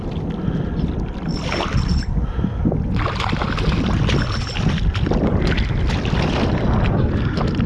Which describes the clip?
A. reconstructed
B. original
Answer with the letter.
B